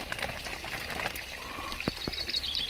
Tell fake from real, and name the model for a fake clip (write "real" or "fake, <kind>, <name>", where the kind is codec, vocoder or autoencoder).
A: real